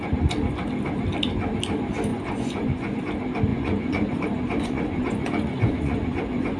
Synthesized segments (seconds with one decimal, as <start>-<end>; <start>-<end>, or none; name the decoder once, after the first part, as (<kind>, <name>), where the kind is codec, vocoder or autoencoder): 2.1-3.0 (vocoder, Vocos); 3.5-6.6